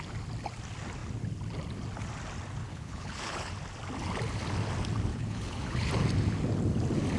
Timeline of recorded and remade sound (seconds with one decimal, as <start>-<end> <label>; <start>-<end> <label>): 0.0-2.6 recorded; 2.6-3.5 remade; 3.5-5.1 recorded; 5.1-5.9 remade; 5.9-7.2 recorded